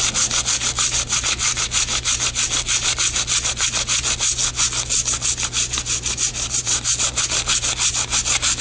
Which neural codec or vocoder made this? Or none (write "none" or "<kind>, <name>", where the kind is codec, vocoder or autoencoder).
none